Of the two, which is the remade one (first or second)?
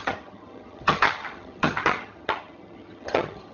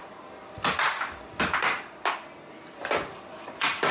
first